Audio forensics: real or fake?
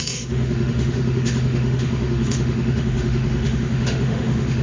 fake